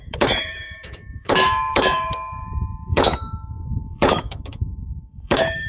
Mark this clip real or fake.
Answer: fake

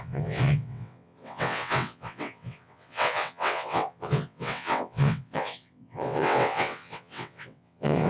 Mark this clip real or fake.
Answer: fake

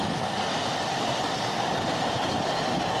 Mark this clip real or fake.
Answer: real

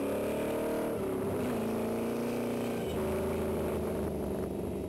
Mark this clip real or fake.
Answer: fake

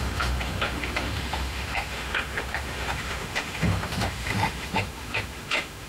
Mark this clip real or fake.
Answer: fake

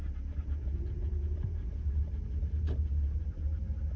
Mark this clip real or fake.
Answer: real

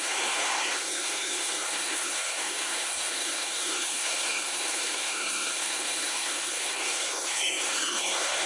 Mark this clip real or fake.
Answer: fake